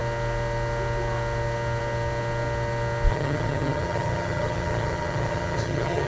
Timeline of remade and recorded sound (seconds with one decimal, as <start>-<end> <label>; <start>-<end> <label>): 0.0-3.1 recorded; 3.1-6.1 remade